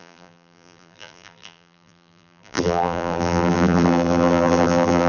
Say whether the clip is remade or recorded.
remade